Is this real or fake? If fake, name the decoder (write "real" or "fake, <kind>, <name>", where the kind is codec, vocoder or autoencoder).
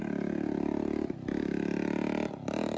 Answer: real